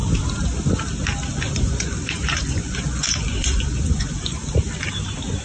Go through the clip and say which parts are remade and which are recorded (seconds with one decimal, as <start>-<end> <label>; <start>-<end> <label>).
0.0-1.3 recorded; 1.3-4.5 remade; 4.5-5.4 recorded